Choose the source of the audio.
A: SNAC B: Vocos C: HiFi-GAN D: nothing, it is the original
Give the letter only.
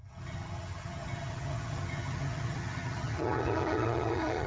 C